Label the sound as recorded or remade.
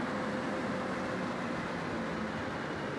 recorded